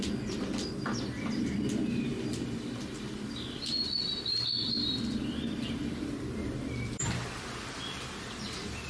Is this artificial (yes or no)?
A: yes